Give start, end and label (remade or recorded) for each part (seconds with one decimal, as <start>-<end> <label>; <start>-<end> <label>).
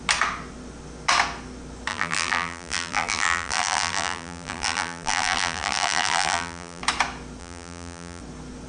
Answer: 0.0-1.9 recorded; 1.9-6.8 remade; 6.8-7.4 recorded; 7.4-8.2 remade; 8.2-8.7 recorded